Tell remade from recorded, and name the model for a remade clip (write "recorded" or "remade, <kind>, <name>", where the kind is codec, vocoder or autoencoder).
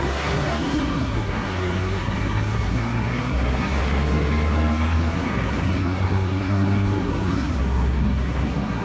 remade, codec, SNAC